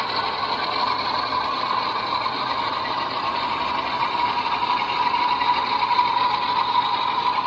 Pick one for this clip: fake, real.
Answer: real